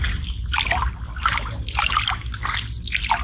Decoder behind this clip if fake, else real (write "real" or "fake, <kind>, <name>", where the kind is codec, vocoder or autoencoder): real